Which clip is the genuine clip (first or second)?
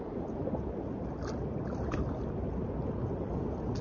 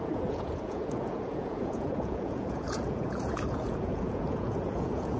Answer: first